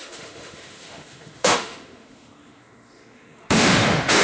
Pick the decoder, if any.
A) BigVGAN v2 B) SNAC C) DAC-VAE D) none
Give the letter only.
C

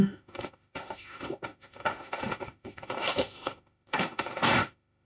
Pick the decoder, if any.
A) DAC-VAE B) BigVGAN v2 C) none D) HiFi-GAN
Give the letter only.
A